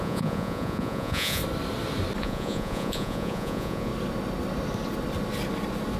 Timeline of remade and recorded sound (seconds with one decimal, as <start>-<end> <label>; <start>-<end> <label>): 0.0-1.4 remade; 1.4-2.2 recorded; 2.2-3.9 remade; 3.9-6.0 recorded